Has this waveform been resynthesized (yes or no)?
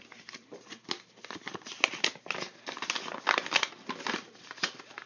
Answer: no